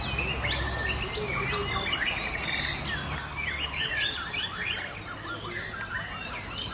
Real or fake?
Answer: real